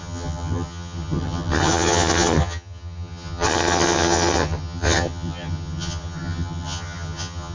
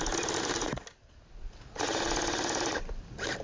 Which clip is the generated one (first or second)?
first